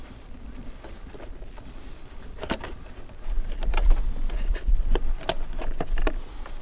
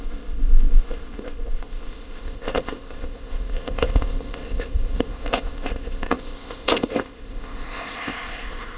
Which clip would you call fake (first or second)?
second